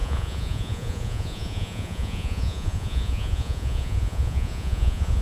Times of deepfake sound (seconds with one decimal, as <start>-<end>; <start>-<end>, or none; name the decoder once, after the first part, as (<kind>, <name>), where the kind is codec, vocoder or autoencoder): 0.0-5.2 (vocoder, Vocos)